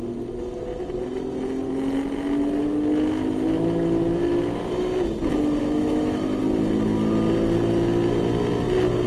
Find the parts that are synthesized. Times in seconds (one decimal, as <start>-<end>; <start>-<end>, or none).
5.6-6.4